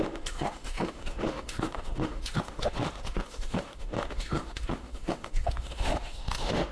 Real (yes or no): no